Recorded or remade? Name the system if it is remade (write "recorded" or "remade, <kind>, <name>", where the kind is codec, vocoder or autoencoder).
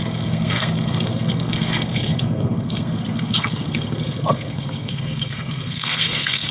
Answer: remade, codec, SNAC